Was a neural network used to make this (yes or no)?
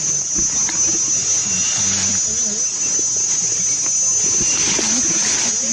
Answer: no